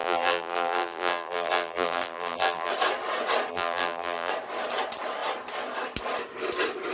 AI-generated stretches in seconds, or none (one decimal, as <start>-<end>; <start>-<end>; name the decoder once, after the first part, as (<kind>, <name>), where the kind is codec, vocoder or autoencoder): 0.0-2.7 (vocoder, BigVGAN v2); 3.5-4.3